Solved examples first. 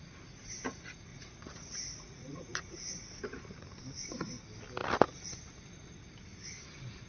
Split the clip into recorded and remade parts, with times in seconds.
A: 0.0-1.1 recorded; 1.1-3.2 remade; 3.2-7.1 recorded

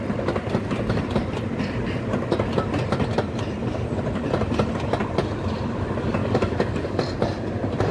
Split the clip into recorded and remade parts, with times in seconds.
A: 0.0-6.2 recorded; 6.2-7.0 remade; 7.0-7.9 recorded